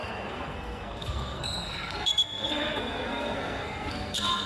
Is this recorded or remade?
remade